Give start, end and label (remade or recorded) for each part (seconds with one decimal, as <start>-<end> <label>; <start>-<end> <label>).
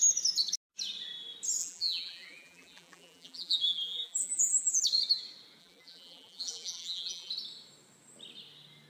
0.0-1.6 recorded; 1.6-4.8 remade; 4.8-5.6 recorded; 5.6-7.3 remade; 7.3-8.9 recorded